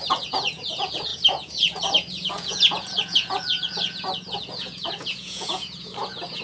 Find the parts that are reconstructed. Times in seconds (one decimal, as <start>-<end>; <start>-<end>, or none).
0.0-6.4